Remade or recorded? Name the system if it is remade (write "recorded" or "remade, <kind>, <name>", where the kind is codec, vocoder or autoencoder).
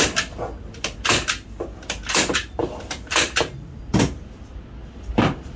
recorded